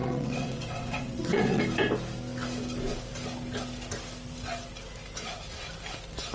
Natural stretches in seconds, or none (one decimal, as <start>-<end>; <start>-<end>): 1.6-6.3